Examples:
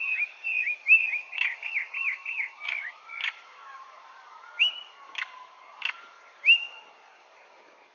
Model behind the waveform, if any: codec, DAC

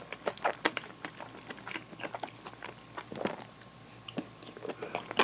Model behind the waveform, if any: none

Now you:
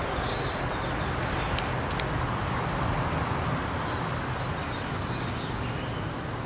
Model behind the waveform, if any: none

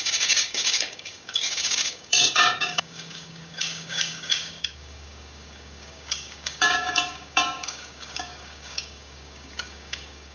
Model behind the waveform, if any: codec, DAC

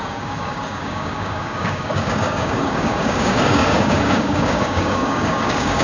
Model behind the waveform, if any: codec, DAC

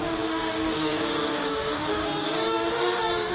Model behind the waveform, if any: codec, DAC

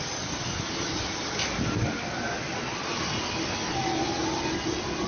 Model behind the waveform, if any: none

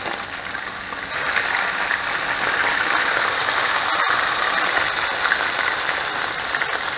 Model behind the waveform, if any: none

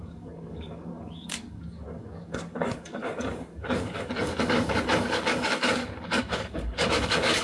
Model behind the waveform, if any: codec, DAC